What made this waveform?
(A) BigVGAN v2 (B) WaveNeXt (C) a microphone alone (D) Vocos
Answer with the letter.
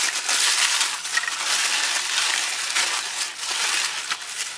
C